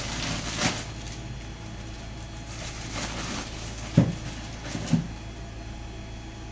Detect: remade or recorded recorded